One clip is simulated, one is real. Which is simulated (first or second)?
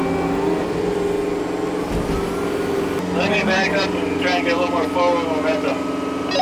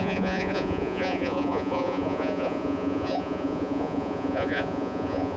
second